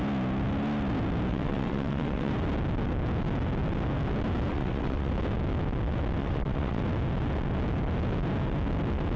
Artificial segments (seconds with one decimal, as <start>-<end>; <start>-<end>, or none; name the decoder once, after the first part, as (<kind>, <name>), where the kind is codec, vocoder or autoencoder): 1.3-2.3 (vocoder, WaveNeXt); 4.5-5.1; 6.2-6.8

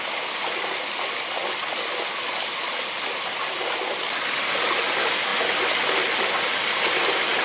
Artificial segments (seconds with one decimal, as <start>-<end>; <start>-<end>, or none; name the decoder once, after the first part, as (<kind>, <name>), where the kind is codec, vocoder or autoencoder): none

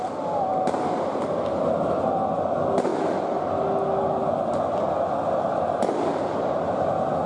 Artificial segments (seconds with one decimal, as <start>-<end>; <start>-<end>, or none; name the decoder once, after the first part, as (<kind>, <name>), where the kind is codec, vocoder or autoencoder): none